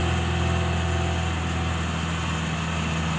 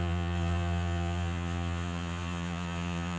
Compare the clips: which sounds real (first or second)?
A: first